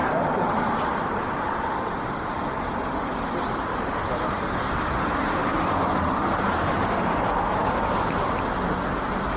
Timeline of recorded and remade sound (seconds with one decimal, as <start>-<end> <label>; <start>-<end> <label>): 0.0-2.5 remade; 2.5-5.4 recorded; 5.4-8.2 remade; 8.2-9.4 recorded